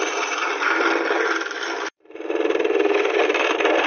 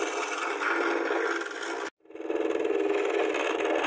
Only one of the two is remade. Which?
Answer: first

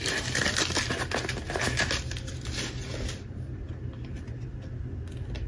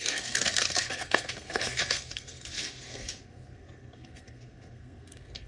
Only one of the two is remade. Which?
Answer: second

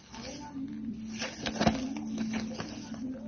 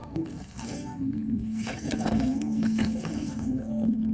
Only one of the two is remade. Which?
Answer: second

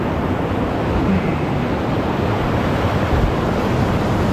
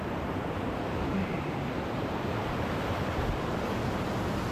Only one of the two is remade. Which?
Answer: second